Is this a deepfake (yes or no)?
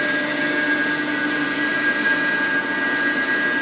no